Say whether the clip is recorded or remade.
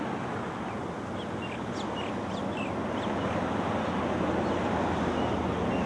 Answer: recorded